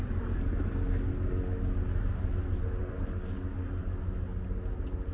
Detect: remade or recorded recorded